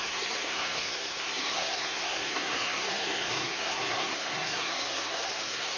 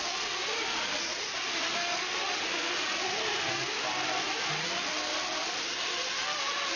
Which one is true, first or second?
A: second